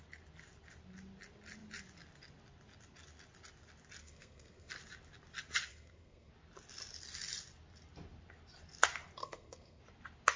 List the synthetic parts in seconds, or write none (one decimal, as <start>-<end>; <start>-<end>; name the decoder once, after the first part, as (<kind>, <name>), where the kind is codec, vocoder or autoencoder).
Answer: 4.0-4.7 (codec, SNAC); 5.7-6.3; 9.2-9.8